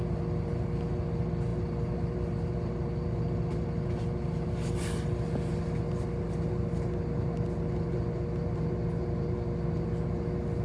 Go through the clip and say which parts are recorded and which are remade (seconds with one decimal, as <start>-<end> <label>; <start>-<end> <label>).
0.0-10.6 recorded